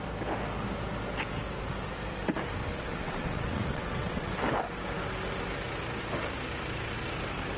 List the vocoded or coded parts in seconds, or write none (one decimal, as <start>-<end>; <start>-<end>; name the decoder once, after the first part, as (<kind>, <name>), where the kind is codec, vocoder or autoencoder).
2.6-4.3 (vocoder, WaveNeXt)